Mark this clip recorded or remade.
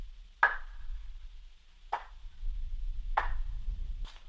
recorded